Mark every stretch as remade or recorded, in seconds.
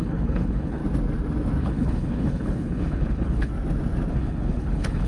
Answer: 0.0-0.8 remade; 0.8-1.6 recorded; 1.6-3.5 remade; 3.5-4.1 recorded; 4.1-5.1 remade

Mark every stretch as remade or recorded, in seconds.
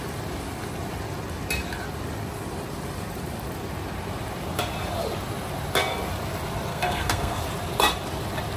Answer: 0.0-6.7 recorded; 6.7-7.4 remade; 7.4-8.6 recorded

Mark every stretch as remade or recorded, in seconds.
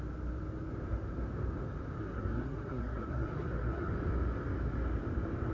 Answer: 0.0-2.0 recorded; 2.0-3.9 remade; 3.9-5.5 recorded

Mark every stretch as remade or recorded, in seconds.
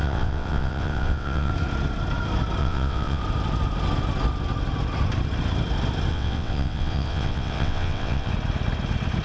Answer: 0.0-1.5 remade; 1.5-2.6 recorded; 2.6-3.2 remade; 3.2-6.1 recorded; 6.1-8.3 remade; 8.3-9.2 recorded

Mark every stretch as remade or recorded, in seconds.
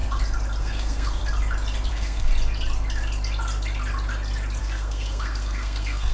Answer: 0.0-0.6 recorded; 0.6-1.2 remade; 1.2-1.9 recorded; 1.9-2.3 remade; 2.3-4.6 recorded; 4.6-6.1 remade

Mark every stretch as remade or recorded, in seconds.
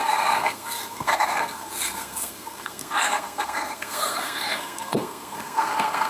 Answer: 0.0-6.1 remade